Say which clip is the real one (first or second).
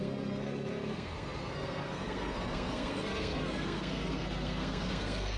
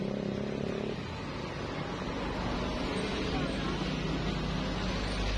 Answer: second